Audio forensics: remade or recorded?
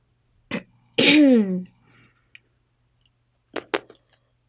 recorded